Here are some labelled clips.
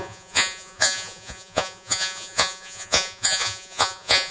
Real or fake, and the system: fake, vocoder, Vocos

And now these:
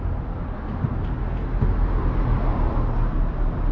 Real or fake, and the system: real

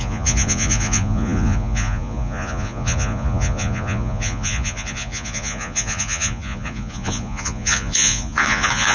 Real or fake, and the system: fake, vocoder, Vocos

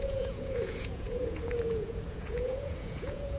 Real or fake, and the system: fake, vocoder, Vocos